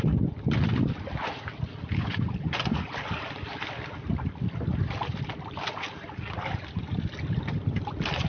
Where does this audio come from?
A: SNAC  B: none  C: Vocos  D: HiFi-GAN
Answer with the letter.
B